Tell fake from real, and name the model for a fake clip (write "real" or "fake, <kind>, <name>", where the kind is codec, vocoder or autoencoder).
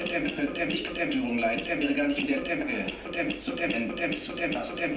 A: real